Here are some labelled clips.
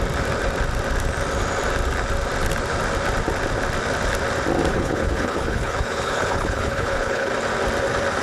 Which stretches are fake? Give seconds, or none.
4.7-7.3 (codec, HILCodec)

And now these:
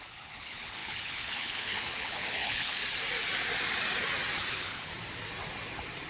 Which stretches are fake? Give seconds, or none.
0.0-2.8 (codec, HILCodec); 4.5-4.9

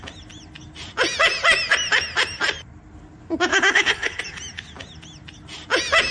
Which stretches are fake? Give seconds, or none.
3.5-4.2 (codec, HILCodec)